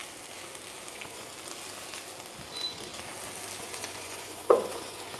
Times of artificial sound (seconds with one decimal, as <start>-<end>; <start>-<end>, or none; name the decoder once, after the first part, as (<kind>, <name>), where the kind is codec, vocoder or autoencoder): 0.9-1.3 (vocoder, Vocos); 2.5-2.9; 3.6-5.2